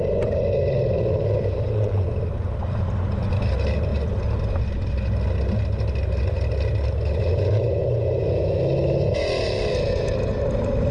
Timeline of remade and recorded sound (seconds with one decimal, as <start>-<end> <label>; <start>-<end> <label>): 0.0-3.9 recorded; 3.9-4.6 remade; 4.6-10.9 recorded